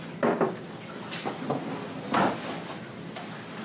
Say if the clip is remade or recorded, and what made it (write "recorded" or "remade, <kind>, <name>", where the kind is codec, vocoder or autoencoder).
recorded